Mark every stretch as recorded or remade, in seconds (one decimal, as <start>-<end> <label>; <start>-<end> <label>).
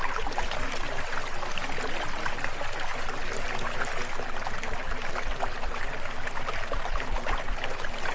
0.0-8.1 recorded